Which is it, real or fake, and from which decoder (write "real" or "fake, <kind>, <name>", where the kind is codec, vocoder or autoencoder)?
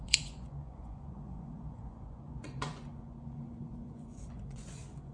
fake, vocoder, Vocos